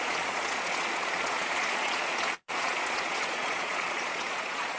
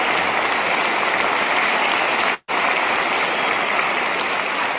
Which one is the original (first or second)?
second